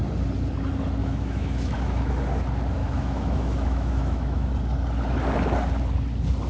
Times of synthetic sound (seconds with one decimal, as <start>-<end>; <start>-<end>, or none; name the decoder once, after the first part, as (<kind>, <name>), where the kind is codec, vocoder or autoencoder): 1.0-2.1 (autoencoder, DAC-VAE); 2.8-4.5